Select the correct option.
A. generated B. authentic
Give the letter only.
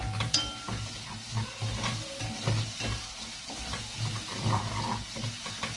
B